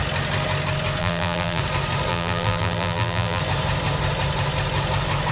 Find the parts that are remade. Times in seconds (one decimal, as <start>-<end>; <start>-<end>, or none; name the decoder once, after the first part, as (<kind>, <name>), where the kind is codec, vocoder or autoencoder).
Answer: 1.0-1.6 (vocoder, BigVGAN v2); 2.1-3.4